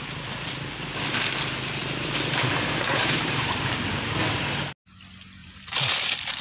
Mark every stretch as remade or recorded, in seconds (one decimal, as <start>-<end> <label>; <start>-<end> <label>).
0.0-1.8 recorded; 1.8-3.7 remade; 3.7-5.4 recorded; 5.4-6.0 remade; 6.0-6.4 recorded